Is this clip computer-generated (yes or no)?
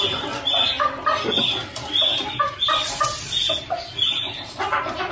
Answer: no